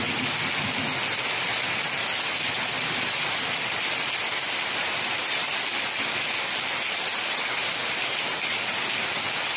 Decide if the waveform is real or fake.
real